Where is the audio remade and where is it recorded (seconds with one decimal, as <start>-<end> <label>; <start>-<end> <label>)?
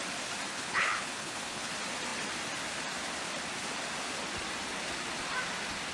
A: 0.0-0.5 recorded; 0.5-1.7 remade; 1.7-5.9 recorded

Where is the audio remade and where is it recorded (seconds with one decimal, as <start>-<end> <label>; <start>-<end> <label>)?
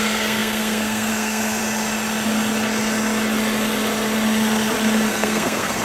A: 0.0-1.6 remade; 1.6-5.1 recorded; 5.1-5.8 remade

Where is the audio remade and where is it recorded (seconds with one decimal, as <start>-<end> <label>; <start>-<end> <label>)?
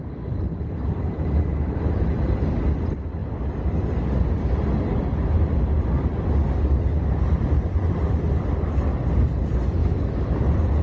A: 0.0-9.8 recorded; 9.8-10.3 remade; 10.3-10.8 recorded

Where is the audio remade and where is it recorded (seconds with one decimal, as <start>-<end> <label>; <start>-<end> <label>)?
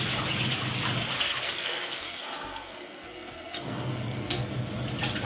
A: 0.0-1.3 recorded; 1.3-4.5 remade; 4.5-5.3 recorded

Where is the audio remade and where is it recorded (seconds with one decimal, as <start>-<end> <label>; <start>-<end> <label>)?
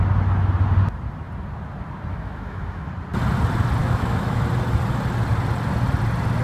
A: 0.0-2.1 recorded; 2.1-2.9 remade; 2.9-3.8 recorded; 3.8-4.4 remade; 4.4-6.4 recorded